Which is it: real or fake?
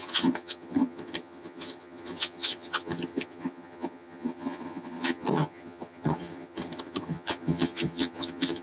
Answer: fake